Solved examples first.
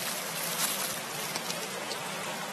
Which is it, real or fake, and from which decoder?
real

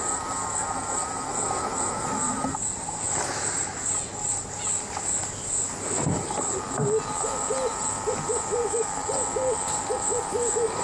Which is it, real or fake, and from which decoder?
real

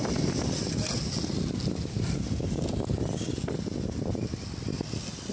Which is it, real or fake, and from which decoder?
real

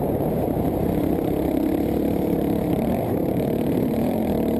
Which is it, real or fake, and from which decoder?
fake, vocoder, BigVGAN v2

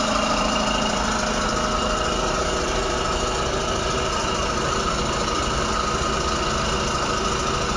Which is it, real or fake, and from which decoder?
real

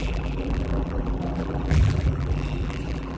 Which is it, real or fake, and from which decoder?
fake, vocoder, BigVGAN v2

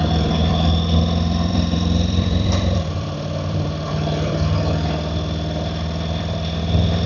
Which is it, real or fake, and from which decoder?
fake, vocoder, BigVGAN v2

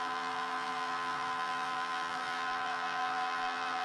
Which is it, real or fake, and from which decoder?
fake, vocoder, BigVGAN v2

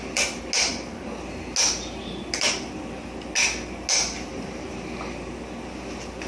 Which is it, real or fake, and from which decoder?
real